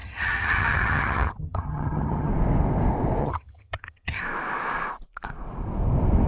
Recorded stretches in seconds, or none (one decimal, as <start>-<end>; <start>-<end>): 2.3-3.2; 4.2-6.3